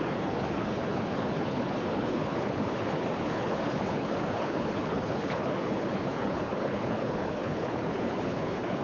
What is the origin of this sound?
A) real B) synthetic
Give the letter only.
B